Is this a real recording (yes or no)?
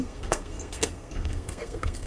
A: no